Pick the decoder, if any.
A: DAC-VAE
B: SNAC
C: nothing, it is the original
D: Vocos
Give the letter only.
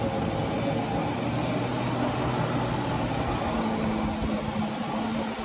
C